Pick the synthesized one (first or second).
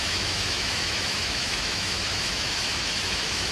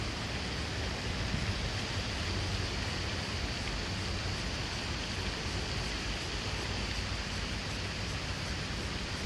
first